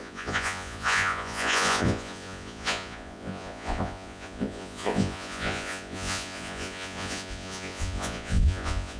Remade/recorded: remade